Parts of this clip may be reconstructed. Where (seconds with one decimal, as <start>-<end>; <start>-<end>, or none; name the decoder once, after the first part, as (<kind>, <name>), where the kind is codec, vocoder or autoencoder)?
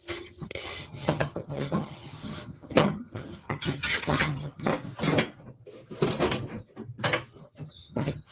0.0-4.7 (vocoder, HiFi-GAN); 7.7-8.3